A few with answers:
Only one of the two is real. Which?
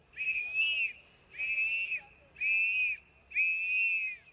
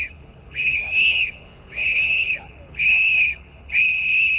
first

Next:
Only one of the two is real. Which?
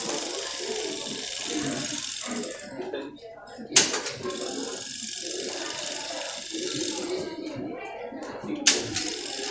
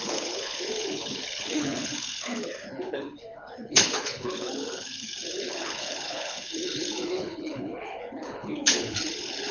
first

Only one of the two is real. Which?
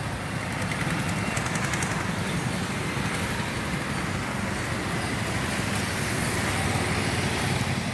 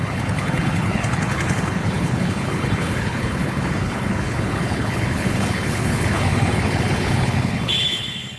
first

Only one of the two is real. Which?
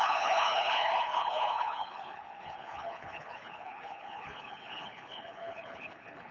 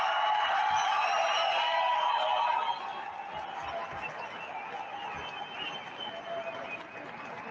second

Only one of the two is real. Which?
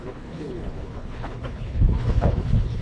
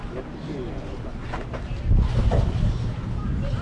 second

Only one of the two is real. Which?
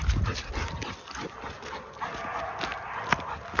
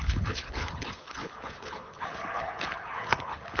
first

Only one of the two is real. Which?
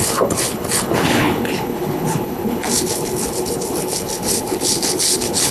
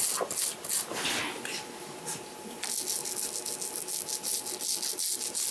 second